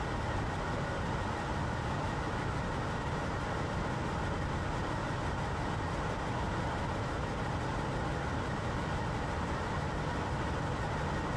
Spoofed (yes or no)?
no